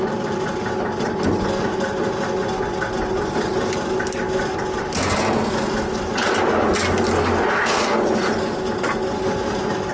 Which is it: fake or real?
real